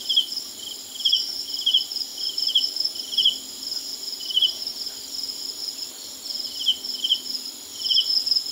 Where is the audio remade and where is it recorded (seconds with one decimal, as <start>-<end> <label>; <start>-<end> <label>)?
0.0-6.7 recorded; 6.7-7.3 remade; 7.3-8.5 recorded